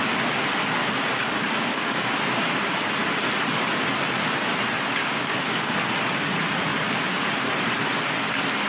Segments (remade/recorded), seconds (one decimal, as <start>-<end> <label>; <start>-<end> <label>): 0.0-0.8 recorded; 0.8-2.1 remade; 2.1-5.0 recorded; 5.0-5.7 remade; 5.7-8.7 recorded